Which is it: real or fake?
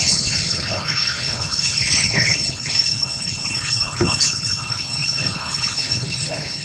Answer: fake